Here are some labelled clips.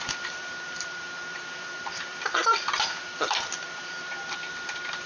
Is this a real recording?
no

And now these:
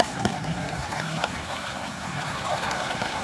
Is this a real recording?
no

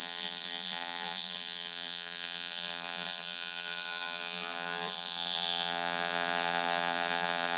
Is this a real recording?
no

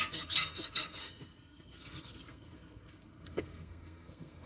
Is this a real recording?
no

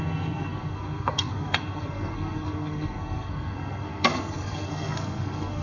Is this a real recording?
no